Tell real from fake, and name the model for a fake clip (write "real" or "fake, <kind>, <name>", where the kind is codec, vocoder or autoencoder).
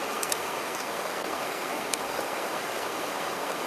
fake, codec, SNAC